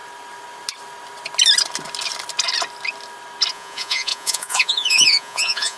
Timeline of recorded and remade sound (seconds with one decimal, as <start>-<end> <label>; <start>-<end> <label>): 0.0-3.5 recorded; 3.5-5.8 remade